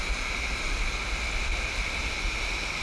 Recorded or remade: recorded